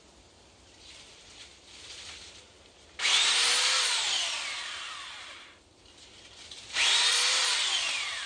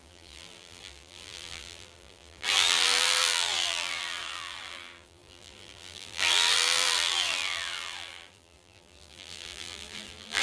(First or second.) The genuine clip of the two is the first